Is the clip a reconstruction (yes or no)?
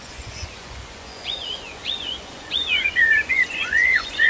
yes